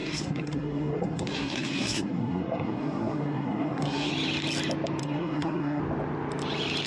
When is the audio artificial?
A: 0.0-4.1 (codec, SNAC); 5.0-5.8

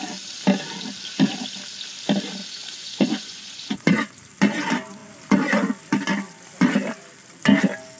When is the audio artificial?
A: 2.4-4.1 (vocoder, Vocos)

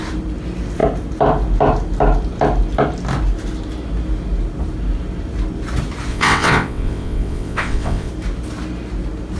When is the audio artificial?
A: 6.1-8.1 (vocoder, WaveNeXt)

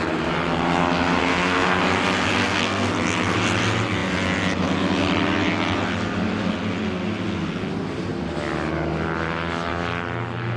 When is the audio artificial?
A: 1.2-1.8 (codec, SNAC); 2.3-2.9

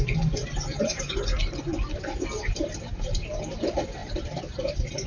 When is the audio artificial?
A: none

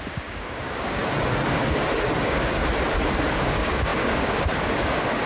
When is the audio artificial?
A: 0.0-1.0 (codec, DAC); 2.2-2.6; 3.3-5.3

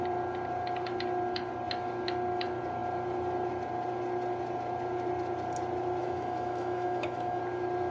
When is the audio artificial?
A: 6.0-7.4 (autoencoder, DAC-VAE)

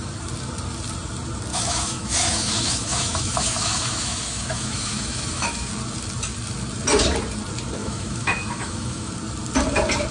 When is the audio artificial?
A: 1.5-5.7 (autoencoder, DAC-VAE); 7.8-9.1